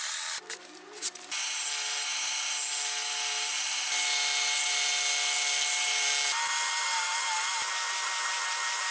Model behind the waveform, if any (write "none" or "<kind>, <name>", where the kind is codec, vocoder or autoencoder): none